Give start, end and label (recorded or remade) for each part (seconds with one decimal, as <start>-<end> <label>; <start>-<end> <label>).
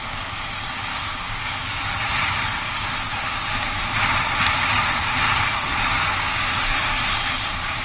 0.0-0.9 recorded; 0.9-2.1 remade; 2.1-3.1 recorded; 3.1-3.8 remade; 3.8-5.3 recorded; 5.3-7.0 remade; 7.0-7.8 recorded